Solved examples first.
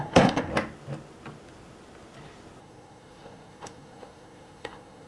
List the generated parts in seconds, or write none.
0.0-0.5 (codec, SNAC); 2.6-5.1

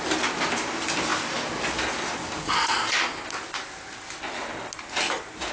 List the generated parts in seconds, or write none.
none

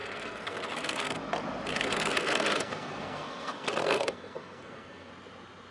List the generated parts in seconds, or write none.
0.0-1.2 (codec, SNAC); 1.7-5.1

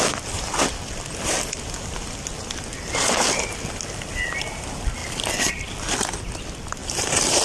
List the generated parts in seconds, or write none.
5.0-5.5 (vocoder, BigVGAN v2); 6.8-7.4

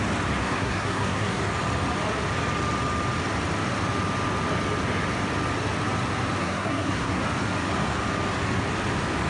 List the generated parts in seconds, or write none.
0.4-1.4 (codec, SNAC); 6.4-7.2